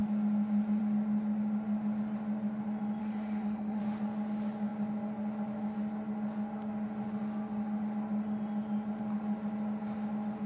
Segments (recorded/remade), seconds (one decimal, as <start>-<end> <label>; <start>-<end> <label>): 0.0-3.0 recorded; 3.0-3.8 remade; 3.8-10.5 recorded